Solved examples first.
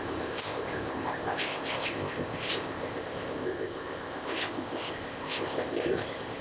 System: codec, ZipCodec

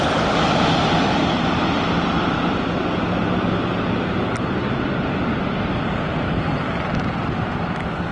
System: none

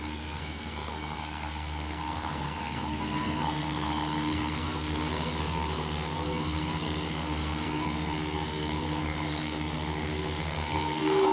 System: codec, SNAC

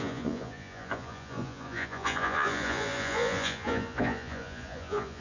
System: vocoder, Vocos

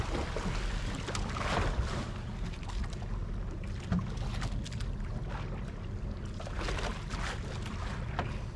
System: none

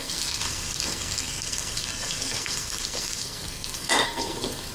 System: codec, SNAC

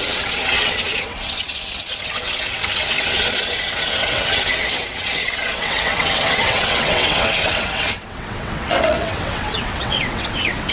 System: vocoder, WaveNeXt